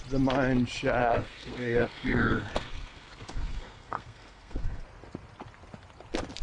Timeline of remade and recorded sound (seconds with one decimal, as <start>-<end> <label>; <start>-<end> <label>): 0.0-1.0 recorded; 1.0-4.8 remade; 4.8-6.4 recorded